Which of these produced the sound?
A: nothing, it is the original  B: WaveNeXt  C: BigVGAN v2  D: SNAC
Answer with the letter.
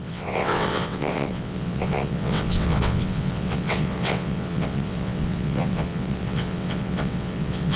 B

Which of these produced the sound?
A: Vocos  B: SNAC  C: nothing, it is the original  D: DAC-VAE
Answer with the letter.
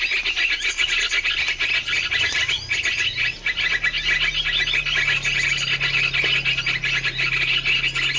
C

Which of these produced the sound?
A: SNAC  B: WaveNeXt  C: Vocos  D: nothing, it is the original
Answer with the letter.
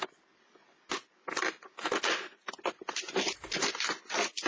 D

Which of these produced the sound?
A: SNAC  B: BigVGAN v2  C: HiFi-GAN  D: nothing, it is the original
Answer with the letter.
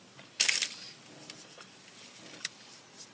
D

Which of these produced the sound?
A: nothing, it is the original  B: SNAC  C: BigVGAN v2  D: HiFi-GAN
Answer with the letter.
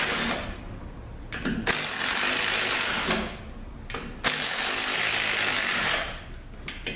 A